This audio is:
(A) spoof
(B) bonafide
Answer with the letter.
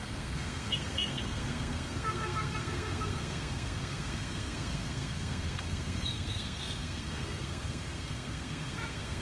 A